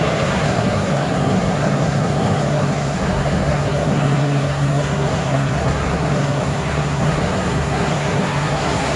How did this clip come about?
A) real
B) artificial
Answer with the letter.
B